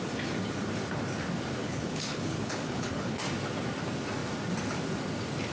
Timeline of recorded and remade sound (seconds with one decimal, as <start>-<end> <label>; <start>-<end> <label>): 0.0-1.6 recorded; 1.6-3.2 remade; 3.2-5.5 recorded